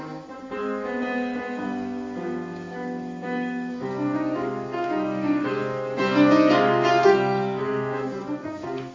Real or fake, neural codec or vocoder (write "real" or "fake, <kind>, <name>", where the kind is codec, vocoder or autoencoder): fake, codec, DAC